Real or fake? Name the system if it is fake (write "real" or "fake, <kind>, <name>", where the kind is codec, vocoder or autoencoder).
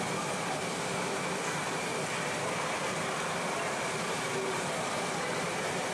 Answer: real